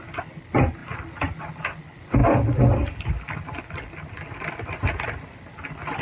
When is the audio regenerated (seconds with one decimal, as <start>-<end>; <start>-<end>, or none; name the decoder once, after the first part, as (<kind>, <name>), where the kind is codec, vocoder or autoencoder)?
none